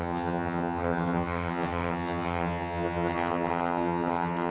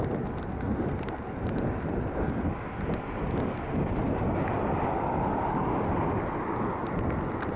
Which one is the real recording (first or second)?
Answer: second